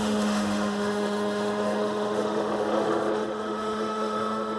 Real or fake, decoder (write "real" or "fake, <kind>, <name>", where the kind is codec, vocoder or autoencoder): fake, autoencoder, DAC-VAE